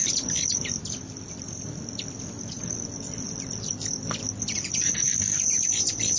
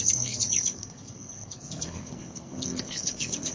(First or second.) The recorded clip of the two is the first